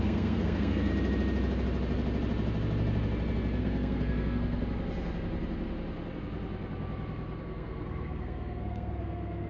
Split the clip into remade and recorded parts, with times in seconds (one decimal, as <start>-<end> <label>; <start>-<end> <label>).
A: 0.0-0.9 remade; 0.9-3.6 recorded; 3.6-4.6 remade; 4.6-7.4 recorded; 7.4-9.5 remade